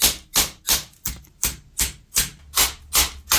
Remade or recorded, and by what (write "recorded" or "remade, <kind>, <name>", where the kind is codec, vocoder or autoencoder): recorded